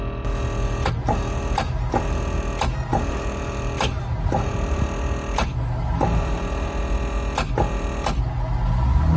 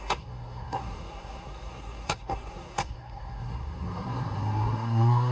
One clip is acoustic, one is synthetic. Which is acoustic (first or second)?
first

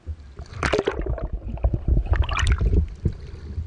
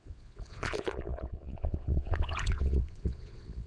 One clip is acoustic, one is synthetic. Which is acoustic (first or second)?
first